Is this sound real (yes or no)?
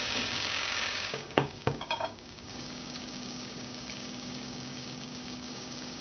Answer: no